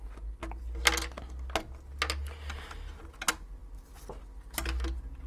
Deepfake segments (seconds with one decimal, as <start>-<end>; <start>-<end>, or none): none